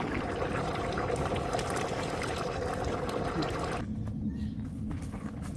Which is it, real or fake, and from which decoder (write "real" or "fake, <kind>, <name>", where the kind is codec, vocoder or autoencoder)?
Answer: real